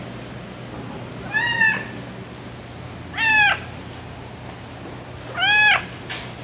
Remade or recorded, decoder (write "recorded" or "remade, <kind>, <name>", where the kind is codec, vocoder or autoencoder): recorded